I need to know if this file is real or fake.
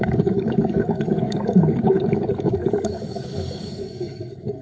fake